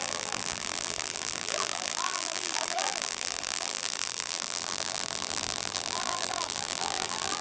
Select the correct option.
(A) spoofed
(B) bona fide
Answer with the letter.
A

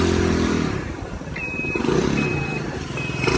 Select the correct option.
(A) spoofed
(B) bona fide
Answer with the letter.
B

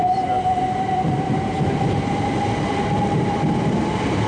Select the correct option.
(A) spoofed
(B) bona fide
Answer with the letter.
A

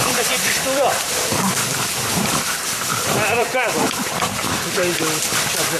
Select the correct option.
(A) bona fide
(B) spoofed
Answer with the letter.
B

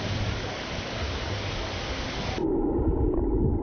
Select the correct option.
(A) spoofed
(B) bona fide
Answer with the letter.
B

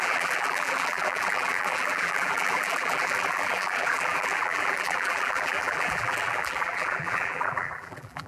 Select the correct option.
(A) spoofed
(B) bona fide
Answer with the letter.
A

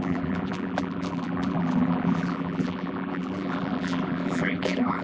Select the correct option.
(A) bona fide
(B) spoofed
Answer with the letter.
B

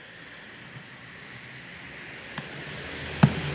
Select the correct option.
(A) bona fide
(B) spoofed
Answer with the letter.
A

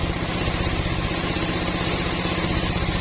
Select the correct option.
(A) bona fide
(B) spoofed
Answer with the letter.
B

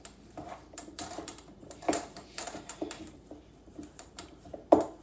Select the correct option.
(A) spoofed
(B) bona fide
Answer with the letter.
A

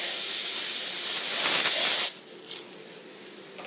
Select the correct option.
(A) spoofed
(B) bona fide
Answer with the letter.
B